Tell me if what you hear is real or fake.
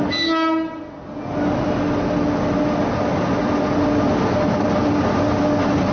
real